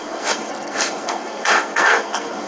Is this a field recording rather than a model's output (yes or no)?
no